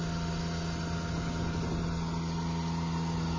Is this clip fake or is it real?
real